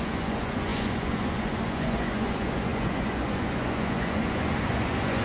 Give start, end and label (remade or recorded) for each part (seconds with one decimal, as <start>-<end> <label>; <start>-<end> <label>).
0.0-5.2 remade